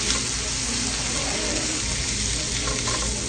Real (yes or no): yes